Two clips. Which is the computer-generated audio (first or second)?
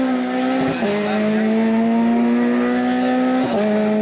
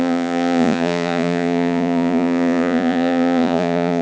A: second